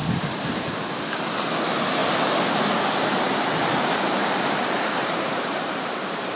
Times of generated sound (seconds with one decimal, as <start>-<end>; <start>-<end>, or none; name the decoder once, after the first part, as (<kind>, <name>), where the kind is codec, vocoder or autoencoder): 4.2-5.8 (vocoder, BigVGAN v2)